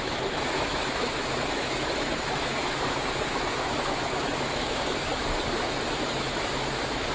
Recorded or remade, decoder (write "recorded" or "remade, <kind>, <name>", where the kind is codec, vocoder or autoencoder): remade, autoencoder, DAC-VAE